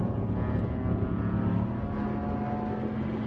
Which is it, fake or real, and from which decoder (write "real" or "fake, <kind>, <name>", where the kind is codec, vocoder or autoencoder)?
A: real